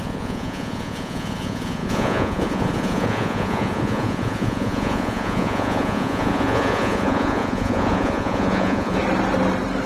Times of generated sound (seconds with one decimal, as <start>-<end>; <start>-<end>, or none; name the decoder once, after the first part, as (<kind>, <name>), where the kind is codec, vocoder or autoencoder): 0.0-9.0 (vocoder, Vocos)